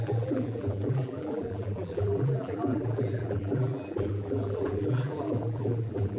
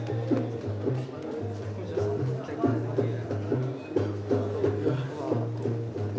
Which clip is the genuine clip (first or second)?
second